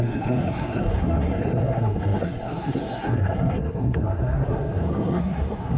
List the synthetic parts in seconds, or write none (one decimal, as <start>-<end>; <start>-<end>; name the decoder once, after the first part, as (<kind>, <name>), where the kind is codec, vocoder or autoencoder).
0.0-5.8 (codec, SNAC)